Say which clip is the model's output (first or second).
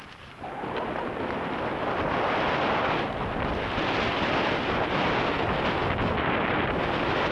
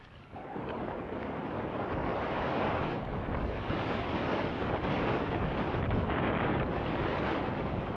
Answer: second